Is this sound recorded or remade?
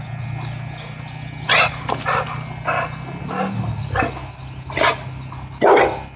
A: recorded